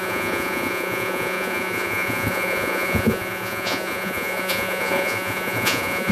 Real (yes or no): no